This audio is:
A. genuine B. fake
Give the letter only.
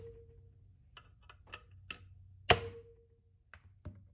A